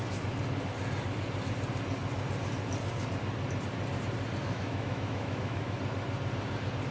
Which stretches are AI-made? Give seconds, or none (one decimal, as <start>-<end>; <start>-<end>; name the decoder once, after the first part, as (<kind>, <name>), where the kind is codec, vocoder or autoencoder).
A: 4.4-5.8 (autoencoder, DAC-VAE)